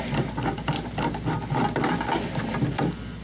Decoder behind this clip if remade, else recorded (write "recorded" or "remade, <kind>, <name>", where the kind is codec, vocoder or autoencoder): recorded